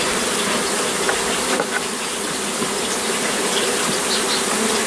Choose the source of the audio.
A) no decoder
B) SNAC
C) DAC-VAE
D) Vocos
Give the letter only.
A